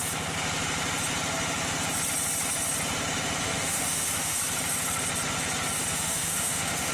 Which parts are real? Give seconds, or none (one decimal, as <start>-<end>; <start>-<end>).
0.0-3.4; 4.4-5.9